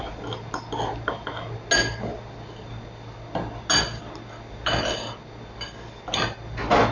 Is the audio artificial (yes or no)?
no